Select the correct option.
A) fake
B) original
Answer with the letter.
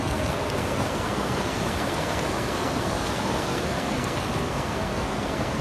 A